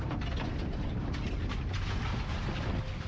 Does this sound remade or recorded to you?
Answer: recorded